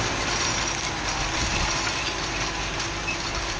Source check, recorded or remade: recorded